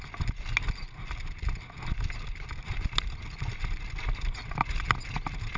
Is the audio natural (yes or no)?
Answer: yes